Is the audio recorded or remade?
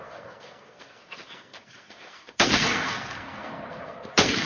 remade